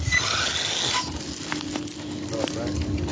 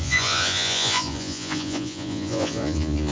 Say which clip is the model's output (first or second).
second